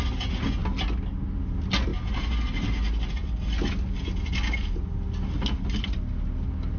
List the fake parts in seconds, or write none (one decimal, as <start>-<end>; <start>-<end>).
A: none